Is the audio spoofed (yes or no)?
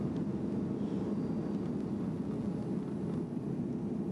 no